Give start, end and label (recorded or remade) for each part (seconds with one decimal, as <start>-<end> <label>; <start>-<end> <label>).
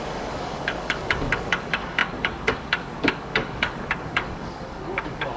0.0-5.4 remade